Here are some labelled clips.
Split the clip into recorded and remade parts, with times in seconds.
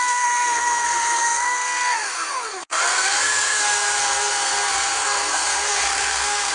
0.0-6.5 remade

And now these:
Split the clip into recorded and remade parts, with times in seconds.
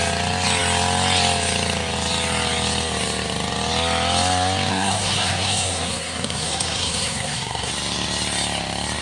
0.0-4.7 recorded; 4.7-7.7 remade; 7.7-9.0 recorded